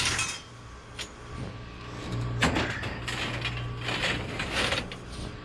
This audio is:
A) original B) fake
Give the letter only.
A